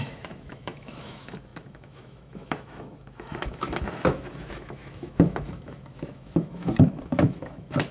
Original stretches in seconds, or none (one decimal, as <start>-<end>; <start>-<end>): none